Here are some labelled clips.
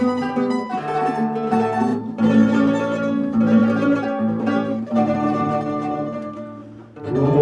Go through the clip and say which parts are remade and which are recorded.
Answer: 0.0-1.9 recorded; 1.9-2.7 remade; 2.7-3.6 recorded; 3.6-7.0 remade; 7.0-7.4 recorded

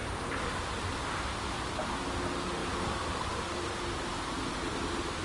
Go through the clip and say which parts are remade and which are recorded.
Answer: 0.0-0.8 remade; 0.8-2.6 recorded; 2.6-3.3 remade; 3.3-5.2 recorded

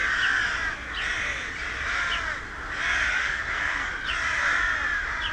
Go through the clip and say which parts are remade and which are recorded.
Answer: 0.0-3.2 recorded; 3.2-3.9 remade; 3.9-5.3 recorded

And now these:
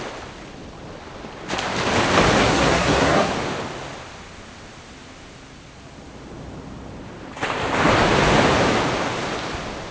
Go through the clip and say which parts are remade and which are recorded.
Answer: 0.0-2.4 recorded; 2.4-3.3 remade; 3.3-9.9 recorded

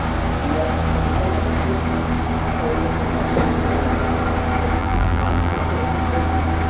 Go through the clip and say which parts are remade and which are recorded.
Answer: 0.0-4.8 recorded; 4.8-5.6 remade; 5.6-6.7 recorded

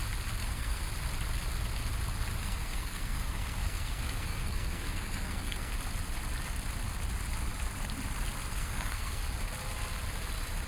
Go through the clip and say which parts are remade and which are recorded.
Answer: 0.0-0.4 recorded; 0.4-0.9 remade; 0.9-2.4 recorded; 2.4-5.7 remade; 5.7-8.5 recorded; 8.5-9.2 remade; 9.2-10.7 recorded

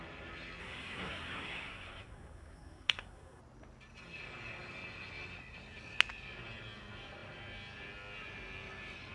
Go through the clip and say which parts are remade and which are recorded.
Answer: 0.0-0.6 recorded; 0.6-3.4 remade; 3.4-9.1 recorded